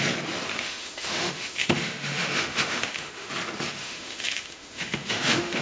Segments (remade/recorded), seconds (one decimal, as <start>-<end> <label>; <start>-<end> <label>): 0.0-0.5 recorded; 0.5-3.3 remade; 3.3-3.8 recorded; 3.8-5.6 remade